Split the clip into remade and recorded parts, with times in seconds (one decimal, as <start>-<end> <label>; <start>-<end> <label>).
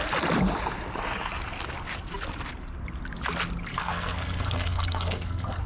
0.0-3.7 recorded; 3.7-5.7 remade